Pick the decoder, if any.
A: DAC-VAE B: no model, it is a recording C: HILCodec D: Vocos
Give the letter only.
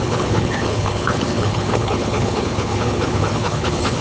C